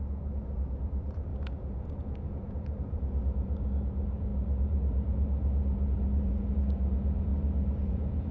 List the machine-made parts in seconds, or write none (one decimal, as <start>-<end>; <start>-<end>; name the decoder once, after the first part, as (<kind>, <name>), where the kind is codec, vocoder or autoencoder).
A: 0.0-7.3 (vocoder, Vocos); 7.8-8.3